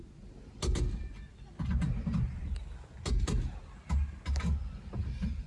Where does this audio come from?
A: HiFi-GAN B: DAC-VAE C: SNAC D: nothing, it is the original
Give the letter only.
D